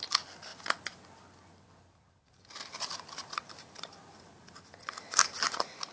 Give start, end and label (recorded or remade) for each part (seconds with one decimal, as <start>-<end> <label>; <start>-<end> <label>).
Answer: 0.0-5.9 recorded